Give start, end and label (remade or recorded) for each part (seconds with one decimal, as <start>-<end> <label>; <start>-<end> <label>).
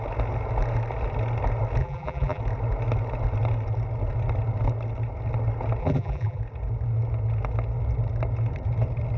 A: 0.0-1.8 recorded; 1.8-2.4 remade; 2.4-5.8 recorded; 5.8-6.4 remade; 6.4-9.2 recorded